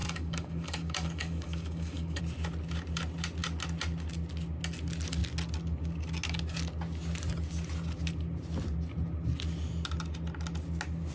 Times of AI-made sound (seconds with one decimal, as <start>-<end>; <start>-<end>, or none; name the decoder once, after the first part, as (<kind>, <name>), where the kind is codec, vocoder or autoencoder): 0.0-2.2 (codec, DAC)